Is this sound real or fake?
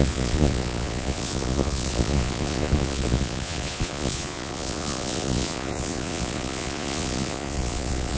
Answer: fake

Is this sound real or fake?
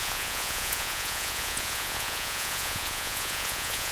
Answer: fake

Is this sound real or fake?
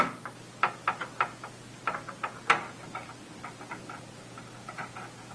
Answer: real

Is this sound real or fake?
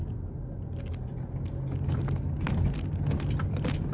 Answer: real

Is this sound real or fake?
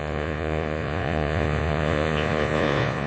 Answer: fake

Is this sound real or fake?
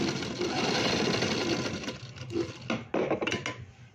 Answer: real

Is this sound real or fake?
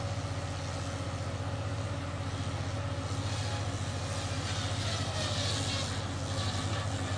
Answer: real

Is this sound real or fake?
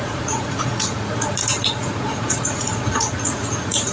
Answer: fake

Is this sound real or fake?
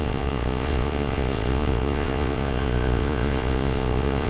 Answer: fake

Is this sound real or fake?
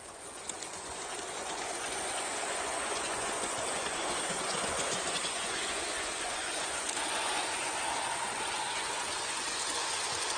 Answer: fake